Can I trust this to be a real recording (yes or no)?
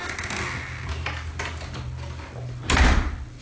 yes